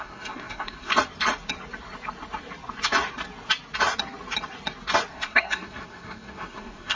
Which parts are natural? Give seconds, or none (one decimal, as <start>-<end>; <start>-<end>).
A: 0.9-5.1